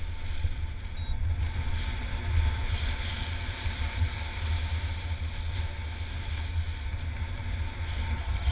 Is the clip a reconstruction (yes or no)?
no